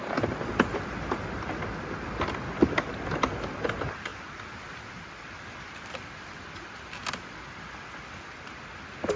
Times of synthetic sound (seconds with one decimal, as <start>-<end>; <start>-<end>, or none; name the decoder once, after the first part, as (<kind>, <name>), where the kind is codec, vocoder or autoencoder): none